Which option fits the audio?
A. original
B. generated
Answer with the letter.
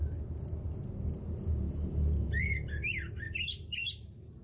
B